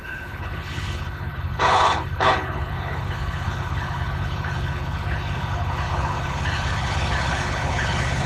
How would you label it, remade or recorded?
remade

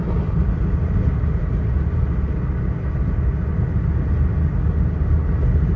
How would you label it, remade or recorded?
recorded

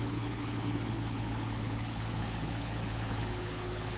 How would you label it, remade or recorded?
remade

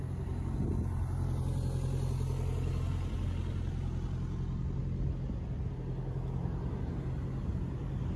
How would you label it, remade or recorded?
recorded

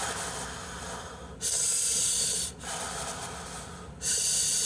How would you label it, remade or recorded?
recorded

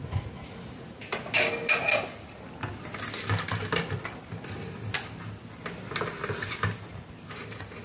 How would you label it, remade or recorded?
recorded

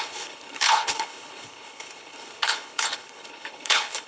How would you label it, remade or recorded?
remade